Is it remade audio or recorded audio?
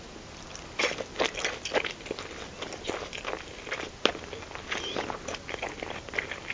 recorded